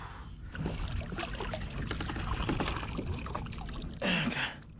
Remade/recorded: recorded